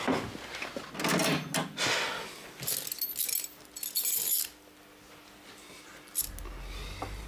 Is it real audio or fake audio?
real